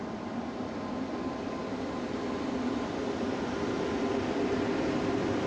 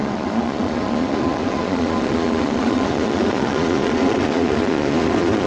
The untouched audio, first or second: first